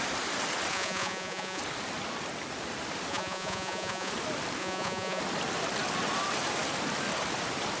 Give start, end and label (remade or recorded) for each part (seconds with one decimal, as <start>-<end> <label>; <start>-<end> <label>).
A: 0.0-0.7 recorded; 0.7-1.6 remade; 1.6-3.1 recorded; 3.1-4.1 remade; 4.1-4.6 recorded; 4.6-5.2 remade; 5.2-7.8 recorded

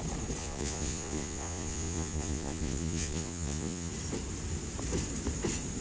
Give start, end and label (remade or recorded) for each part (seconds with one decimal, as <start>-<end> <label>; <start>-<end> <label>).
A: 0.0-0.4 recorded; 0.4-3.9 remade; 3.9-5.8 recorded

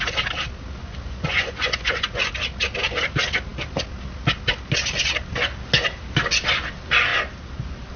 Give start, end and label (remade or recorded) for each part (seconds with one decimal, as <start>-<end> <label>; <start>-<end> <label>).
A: 0.0-0.8 recorded; 0.8-2.3 remade; 2.3-8.0 recorded

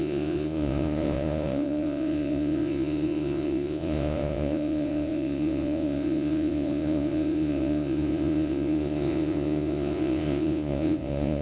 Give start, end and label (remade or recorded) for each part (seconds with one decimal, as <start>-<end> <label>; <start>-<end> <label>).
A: 0.0-11.4 remade

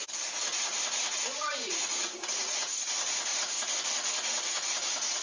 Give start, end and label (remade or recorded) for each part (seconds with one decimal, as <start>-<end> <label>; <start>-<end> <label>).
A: 0.0-0.7 recorded; 0.7-2.9 remade; 2.9-3.3 recorded; 3.3-3.8 remade; 3.8-5.2 recorded

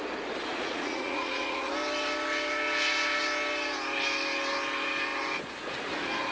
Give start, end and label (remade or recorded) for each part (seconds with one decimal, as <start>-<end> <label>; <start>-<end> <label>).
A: 0.0-0.5 recorded; 0.5-1.7 remade; 1.7-6.3 recorded

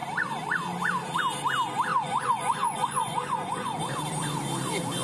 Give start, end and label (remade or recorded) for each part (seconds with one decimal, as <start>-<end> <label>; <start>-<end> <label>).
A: 0.0-1.9 recorded; 1.9-3.8 remade; 3.8-5.0 recorded

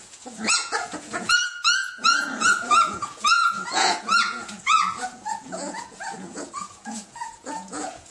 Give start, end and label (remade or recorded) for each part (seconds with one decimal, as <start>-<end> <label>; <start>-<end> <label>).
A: 0.0-8.1 remade